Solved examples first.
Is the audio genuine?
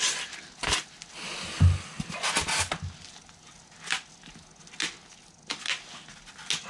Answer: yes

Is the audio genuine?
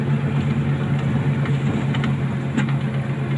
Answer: yes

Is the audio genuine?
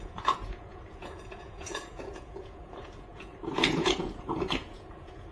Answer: no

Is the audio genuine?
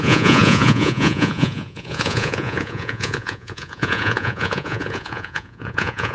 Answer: no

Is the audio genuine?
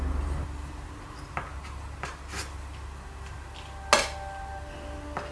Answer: yes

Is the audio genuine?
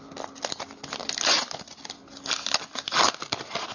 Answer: yes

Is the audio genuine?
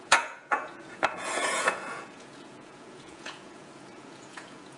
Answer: no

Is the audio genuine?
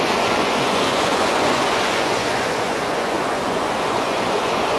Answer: no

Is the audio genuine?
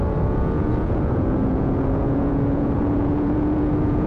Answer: no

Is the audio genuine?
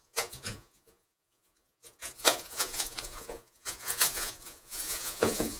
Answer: no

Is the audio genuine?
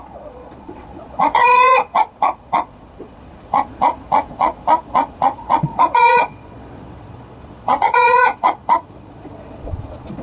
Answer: no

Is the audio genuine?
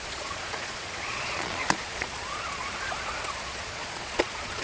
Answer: no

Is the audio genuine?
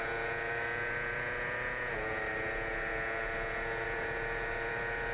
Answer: no